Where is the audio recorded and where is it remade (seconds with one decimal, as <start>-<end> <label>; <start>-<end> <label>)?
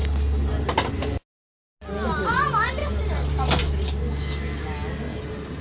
0.0-5.6 recorded